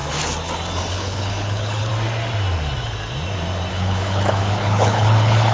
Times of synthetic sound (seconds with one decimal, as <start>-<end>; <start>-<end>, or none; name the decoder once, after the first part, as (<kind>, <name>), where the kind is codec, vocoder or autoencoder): 0.9-1.9 (codec, HILCodec); 3.7-5.5